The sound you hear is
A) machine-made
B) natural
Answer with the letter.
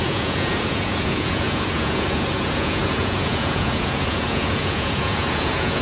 A